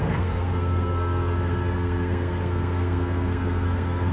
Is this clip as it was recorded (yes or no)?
no